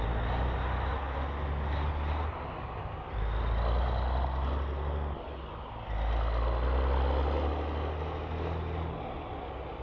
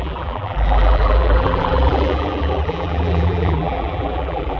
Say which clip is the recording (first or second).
first